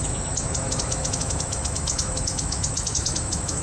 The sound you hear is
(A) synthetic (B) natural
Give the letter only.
A